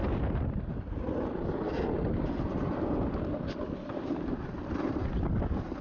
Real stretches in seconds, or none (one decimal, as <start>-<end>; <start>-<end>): 0.0-5.8